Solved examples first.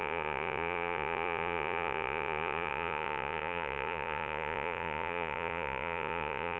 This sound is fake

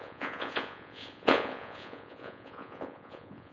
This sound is fake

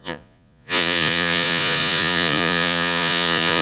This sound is fake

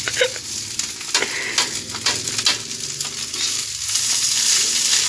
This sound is real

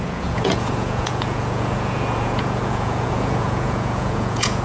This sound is fake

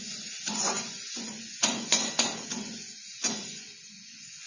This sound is fake